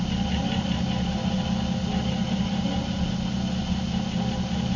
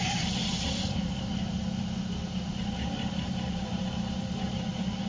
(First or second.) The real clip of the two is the first